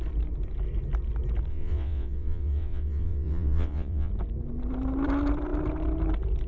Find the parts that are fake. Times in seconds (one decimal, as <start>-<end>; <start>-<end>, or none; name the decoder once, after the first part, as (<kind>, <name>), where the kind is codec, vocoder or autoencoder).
1.5-4.1 (vocoder, WaveNeXt)